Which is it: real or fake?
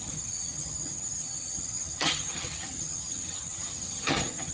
fake